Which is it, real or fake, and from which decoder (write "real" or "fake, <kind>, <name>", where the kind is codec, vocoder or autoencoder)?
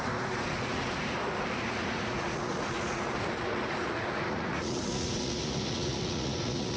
fake, vocoder, Vocos